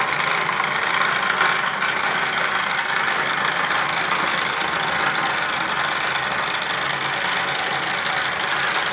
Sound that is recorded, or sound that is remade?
recorded